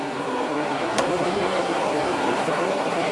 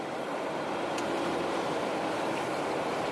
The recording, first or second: second